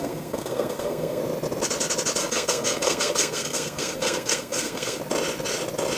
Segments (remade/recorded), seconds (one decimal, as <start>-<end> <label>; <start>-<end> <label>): 0.0-1.2 remade; 1.2-2.2 recorded; 2.2-5.0 remade; 5.0-6.0 recorded